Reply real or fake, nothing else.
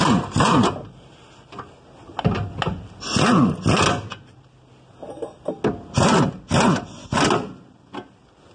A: real